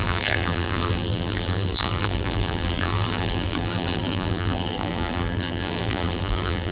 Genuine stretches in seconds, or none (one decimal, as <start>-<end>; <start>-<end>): none